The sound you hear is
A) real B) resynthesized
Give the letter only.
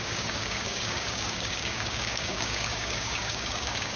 B